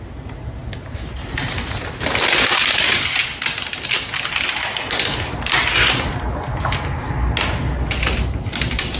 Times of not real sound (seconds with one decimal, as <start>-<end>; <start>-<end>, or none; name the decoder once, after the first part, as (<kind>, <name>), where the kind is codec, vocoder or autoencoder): none